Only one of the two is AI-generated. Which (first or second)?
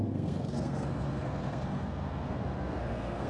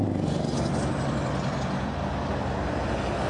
first